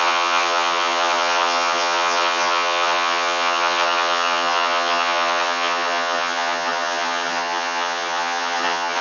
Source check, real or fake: fake